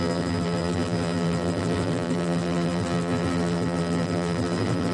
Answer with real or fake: fake